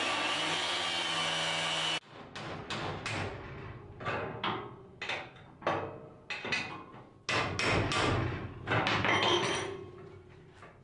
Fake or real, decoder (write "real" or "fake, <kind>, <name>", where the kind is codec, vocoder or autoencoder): real